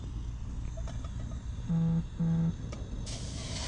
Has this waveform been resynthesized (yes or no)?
no